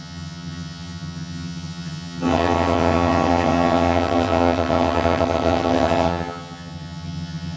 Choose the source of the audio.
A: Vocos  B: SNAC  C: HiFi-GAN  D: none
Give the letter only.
C